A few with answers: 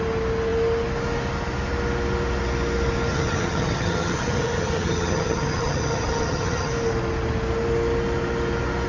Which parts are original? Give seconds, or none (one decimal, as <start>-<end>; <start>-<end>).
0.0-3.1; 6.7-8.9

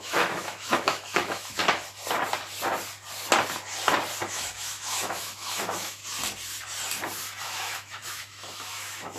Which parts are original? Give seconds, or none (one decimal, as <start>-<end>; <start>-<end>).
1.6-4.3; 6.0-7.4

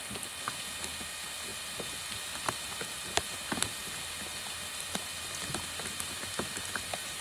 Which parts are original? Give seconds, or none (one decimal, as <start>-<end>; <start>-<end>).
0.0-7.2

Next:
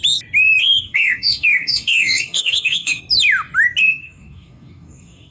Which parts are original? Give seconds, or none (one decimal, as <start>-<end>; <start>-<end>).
0.0-0.6; 3.0-3.8